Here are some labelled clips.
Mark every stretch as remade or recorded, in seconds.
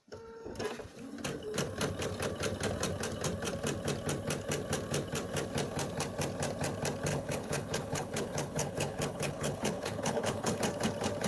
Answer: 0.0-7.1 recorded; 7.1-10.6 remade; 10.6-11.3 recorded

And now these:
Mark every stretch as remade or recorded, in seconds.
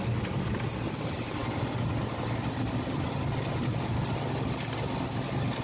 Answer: 0.0-5.6 recorded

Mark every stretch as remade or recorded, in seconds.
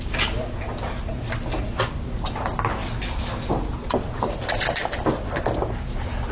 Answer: 0.0-6.3 recorded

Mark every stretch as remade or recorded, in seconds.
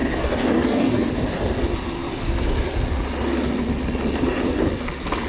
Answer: 0.0-1.1 remade; 1.1-5.3 recorded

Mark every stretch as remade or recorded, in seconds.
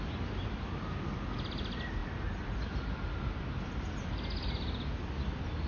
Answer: 0.0-5.7 recorded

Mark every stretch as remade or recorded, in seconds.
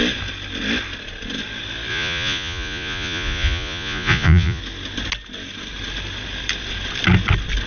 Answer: 0.0-1.9 recorded; 1.9-4.6 remade; 4.6-7.7 recorded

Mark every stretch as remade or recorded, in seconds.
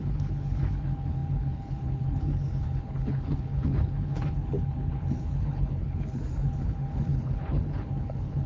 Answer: 0.0-8.5 remade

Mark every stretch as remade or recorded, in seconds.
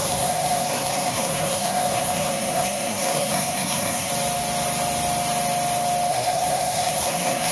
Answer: 0.0-4.1 remade; 4.1-6.1 recorded; 6.1-7.5 remade